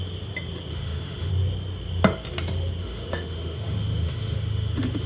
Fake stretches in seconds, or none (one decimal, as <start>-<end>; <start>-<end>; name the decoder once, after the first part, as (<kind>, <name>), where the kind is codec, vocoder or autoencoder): 0.7-1.3 (autoencoder, DAC-VAE); 2.8-5.1